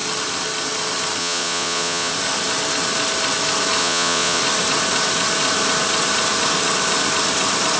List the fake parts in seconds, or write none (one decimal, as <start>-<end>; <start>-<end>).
1.2-2.1; 3.8-4.4